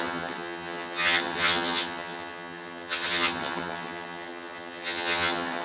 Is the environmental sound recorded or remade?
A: remade